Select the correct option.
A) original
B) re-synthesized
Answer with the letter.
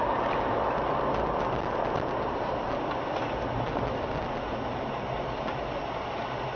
A